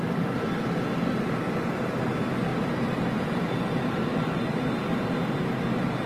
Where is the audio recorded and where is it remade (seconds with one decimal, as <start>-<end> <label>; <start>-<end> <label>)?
0.0-6.1 recorded